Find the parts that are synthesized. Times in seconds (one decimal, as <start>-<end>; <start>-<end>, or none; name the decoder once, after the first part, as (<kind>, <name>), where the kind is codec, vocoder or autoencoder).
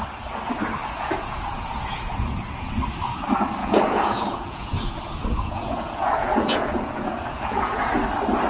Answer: 0.8-2.7 (vocoder, Vocos); 3.6-7.9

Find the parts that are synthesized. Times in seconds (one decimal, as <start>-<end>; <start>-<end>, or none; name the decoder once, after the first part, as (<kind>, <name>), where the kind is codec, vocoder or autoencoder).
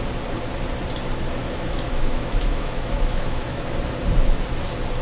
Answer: 1.4-3.6 (autoencoder, DAC-VAE)